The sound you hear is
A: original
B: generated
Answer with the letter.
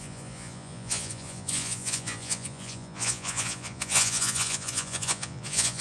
B